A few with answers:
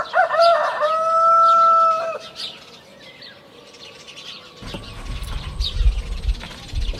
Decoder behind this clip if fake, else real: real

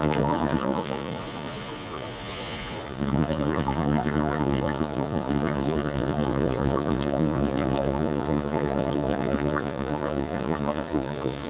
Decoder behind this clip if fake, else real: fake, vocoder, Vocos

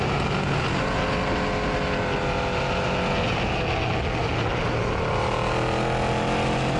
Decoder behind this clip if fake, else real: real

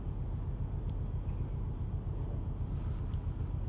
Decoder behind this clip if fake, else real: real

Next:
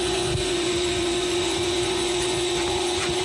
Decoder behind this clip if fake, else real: fake, vocoder, Vocos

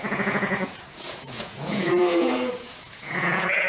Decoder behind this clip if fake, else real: fake, vocoder, Vocos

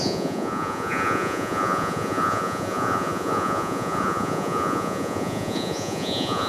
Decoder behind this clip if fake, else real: fake, vocoder, Vocos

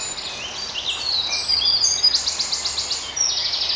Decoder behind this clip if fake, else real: real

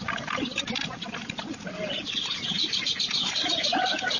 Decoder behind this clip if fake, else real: real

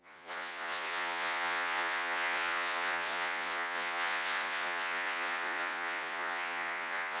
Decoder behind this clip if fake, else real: fake, vocoder, Vocos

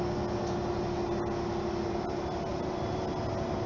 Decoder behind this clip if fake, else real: real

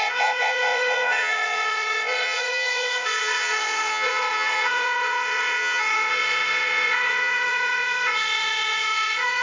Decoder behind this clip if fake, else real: fake, vocoder, Vocos